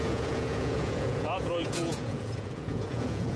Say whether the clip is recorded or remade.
remade